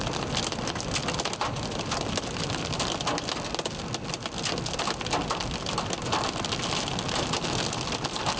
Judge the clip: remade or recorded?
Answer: recorded